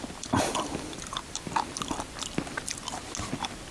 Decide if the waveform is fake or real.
real